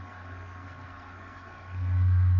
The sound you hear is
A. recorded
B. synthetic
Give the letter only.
B